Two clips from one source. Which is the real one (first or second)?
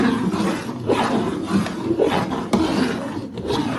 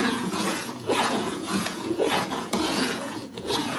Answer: first